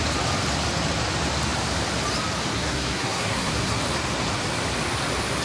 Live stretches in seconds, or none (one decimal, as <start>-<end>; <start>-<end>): 0.0-2.5; 3.8-5.4

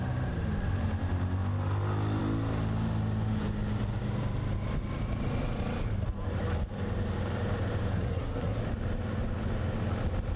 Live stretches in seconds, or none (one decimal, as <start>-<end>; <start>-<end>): 0.0-7.9; 8.6-10.4

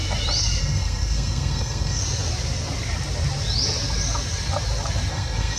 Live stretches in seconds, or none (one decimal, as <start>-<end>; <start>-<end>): 0.0-0.6; 2.0-5.1